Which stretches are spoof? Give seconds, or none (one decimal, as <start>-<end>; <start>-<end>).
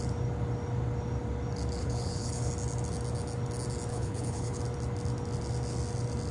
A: 1.8-2.5; 3.9-4.6